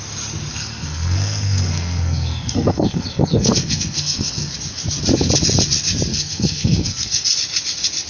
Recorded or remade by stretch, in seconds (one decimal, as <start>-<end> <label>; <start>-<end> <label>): 0.0-0.5 recorded; 0.5-4.5 remade; 4.5-6.1 recorded; 6.1-7.3 remade; 7.3-8.1 recorded